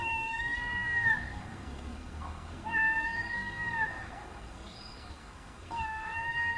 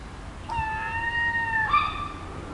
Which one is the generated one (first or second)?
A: first